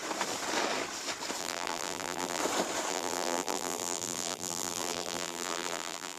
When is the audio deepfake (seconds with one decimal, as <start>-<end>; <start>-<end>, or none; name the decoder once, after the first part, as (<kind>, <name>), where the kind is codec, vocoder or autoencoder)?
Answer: 1.4-2.4 (vocoder, BigVGAN v2); 2.9-6.2